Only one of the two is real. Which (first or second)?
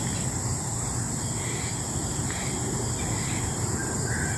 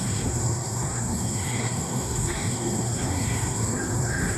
first